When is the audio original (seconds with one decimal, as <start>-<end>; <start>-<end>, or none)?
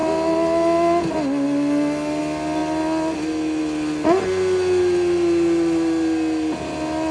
0.0-7.1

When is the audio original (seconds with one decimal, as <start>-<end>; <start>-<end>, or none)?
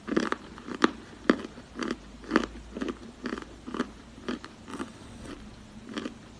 0.0-4.7; 5.3-6.4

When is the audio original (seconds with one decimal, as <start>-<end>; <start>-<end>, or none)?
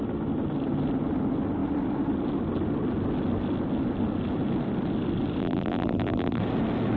0.0-5.4; 6.4-7.0